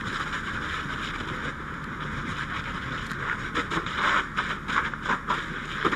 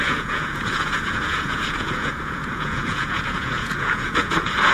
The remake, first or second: second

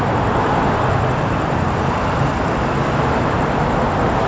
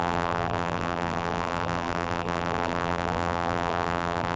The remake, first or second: second